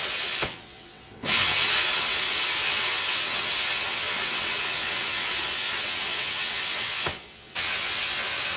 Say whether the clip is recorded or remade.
remade